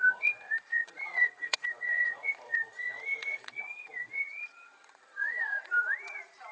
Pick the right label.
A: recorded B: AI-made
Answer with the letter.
B